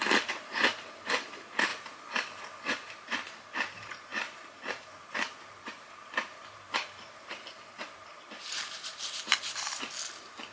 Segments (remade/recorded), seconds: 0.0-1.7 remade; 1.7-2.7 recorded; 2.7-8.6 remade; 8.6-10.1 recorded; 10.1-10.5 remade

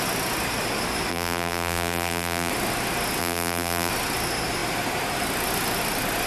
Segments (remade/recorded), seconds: 0.0-1.1 recorded; 1.1-2.5 remade; 2.5-3.2 recorded; 3.2-3.9 remade; 3.9-6.3 recorded

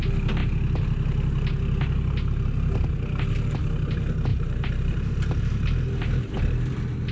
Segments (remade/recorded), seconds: 0.0-4.3 recorded; 4.3-5.1 remade; 5.1-7.1 recorded

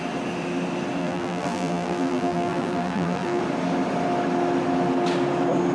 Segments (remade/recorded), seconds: 0.0-1.0 recorded; 1.0-3.4 remade; 3.4-5.7 recorded

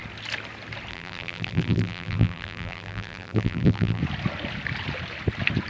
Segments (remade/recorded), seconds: 0.0-0.9 recorded; 0.9-4.0 remade; 4.0-5.7 recorded